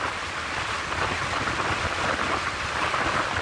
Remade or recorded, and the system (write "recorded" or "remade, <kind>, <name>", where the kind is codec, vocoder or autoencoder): recorded